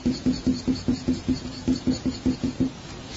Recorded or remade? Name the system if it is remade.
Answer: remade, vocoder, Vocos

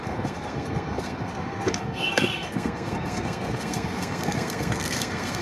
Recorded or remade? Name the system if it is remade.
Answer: remade, codec, SNAC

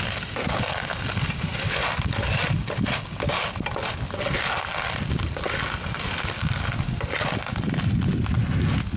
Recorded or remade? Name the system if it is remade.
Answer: recorded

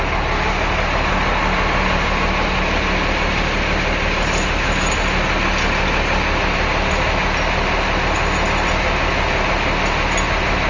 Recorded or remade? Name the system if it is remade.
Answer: recorded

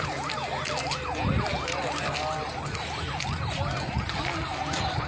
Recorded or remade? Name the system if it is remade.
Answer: recorded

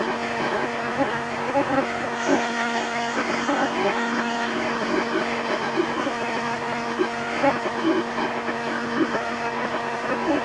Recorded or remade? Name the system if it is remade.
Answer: remade, codec, SNAC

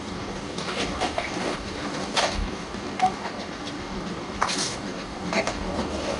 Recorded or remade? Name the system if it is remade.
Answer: remade, codec, DAC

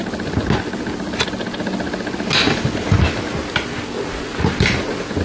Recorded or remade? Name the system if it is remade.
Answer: recorded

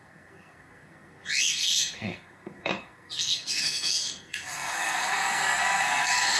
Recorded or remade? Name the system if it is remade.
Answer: remade, codec, SNAC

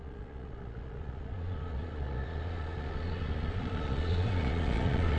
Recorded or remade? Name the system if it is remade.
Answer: remade, vocoder, Vocos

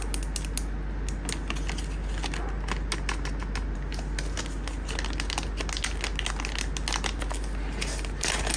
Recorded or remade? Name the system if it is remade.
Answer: recorded